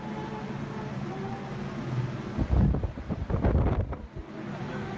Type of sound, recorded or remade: recorded